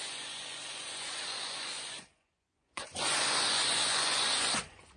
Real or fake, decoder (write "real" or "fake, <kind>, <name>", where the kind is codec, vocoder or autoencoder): fake, vocoder, Vocos